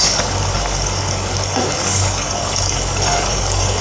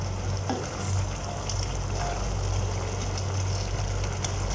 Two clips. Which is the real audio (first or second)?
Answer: second